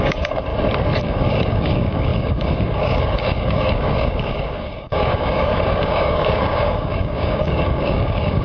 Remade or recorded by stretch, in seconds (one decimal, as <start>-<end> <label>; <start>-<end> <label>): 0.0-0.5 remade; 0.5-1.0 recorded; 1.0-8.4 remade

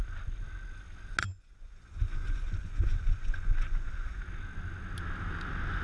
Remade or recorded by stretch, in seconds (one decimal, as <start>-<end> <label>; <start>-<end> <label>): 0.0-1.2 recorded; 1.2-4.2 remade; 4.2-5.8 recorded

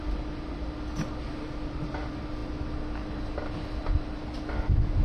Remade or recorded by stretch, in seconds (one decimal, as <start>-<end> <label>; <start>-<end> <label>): 0.0-5.0 recorded

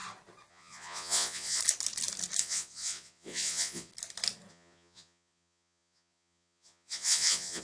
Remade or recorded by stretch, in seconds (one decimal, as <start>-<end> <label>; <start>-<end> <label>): 0.0-0.5 recorded; 0.5-1.6 remade; 1.6-2.4 recorded; 2.4-3.9 remade; 3.9-4.5 recorded; 4.5-7.6 remade

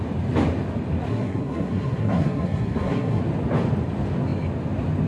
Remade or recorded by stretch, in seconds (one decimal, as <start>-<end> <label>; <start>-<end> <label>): 0.0-1.1 recorded; 1.1-3.2 remade; 3.2-5.1 recorded

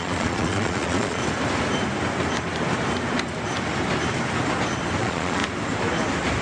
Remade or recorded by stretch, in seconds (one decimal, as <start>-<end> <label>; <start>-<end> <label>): 0.0-1.2 remade; 1.2-5.0 recorded; 5.0-5.4 remade; 5.4-6.4 recorded

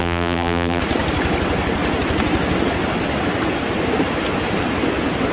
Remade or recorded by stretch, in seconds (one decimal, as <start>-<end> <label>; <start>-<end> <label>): 0.0-0.8 remade; 0.8-5.3 recorded

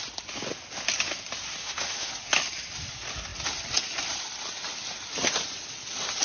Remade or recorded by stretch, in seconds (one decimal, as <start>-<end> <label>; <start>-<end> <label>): 0.0-1.6 recorded; 1.6-2.1 remade; 2.1-6.2 recorded